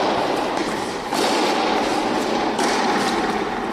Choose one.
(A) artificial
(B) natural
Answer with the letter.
B